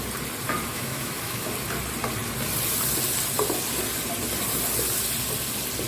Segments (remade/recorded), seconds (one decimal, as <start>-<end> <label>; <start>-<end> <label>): 0.0-0.7 recorded; 0.7-1.5 remade; 1.5-5.9 recorded